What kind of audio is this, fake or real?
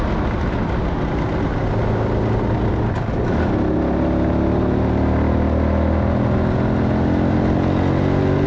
real